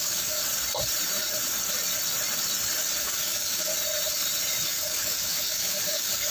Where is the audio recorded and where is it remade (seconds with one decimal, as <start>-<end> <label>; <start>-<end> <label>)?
0.0-0.4 remade; 0.4-3.0 recorded; 3.0-3.7 remade; 3.7-4.7 recorded; 4.7-6.3 remade